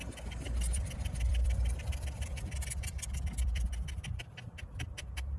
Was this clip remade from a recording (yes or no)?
yes